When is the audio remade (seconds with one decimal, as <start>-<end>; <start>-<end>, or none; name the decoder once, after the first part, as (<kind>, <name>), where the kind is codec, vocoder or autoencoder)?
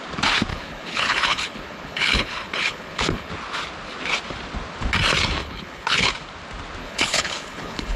0.5-3.3 (codec, HILCodec); 5.4-6.1; 6.8-8.0